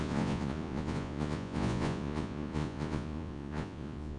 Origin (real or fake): fake